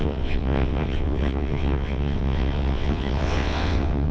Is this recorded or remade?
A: remade